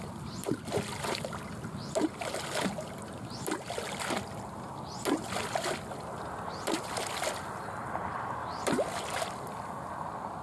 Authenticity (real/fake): real